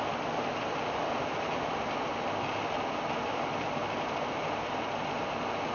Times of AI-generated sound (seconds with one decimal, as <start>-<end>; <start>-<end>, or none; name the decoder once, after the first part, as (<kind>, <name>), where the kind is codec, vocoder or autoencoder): none

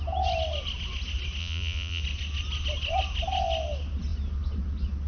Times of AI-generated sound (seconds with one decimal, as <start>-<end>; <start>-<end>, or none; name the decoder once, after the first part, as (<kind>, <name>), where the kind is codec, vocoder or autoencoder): 1.4-2.0 (vocoder, Vocos)

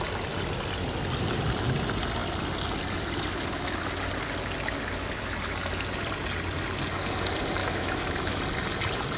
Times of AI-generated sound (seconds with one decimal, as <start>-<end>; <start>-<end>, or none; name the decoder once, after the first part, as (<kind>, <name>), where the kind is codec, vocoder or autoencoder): 7.6-8.4 (autoencoder, DAC-VAE)